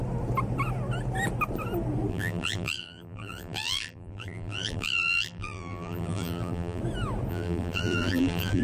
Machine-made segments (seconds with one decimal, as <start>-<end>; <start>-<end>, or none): 2.1-6.8; 7.3-8.6